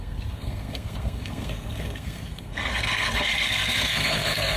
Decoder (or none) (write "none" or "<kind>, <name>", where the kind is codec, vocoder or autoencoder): codec, SNAC